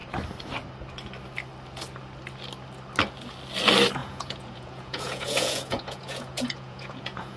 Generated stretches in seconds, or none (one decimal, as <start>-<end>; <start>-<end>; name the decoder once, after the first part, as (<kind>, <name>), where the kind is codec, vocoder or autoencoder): 4.0-7.4 (vocoder, Vocos)